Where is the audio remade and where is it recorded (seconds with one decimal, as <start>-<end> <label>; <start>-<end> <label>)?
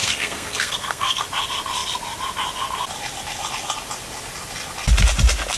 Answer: 0.0-1.2 remade; 1.2-5.6 recorded